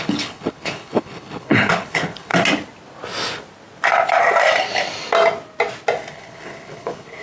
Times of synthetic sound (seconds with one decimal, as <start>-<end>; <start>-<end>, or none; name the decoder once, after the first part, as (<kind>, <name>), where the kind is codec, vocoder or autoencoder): 0.0-2.3 (codec, HILCodec); 6.1-7.2